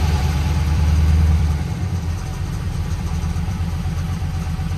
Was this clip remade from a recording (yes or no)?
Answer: yes